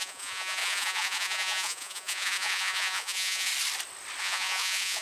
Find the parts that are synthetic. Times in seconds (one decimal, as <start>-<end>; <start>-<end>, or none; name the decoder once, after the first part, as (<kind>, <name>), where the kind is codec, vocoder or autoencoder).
0.0-3.5 (vocoder, Vocos); 4.2-5.0